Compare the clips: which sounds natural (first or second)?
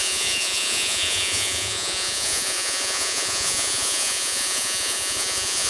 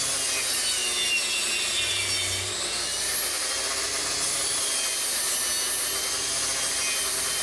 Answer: second